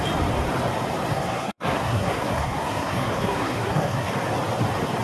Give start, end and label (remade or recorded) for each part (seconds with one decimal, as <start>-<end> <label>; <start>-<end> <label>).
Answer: 0.0-1.1 recorded; 1.1-4.1 remade; 4.1-5.0 recorded